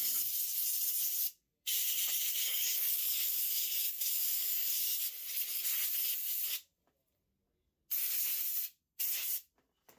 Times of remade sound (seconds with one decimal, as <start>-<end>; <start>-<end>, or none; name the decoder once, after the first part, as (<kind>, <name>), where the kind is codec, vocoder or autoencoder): 2.4-5.0 (codec, DAC)

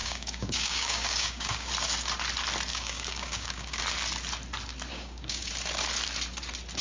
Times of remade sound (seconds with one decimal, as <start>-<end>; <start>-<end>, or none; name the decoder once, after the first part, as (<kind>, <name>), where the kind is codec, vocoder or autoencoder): 0.0-1.7 (codec, DAC); 2.7-3.8; 4.9-5.5

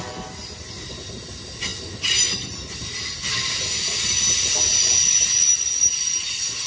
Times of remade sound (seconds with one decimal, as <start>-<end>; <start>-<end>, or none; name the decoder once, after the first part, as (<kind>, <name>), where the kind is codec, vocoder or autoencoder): none

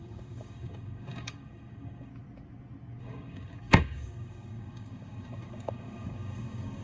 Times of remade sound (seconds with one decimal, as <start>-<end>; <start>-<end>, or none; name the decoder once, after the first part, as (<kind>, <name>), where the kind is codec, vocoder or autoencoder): 0.0-2.1 (codec, DAC); 3.0-6.8